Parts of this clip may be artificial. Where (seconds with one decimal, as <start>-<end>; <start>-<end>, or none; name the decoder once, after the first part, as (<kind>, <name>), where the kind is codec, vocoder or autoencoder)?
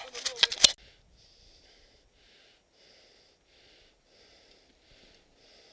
none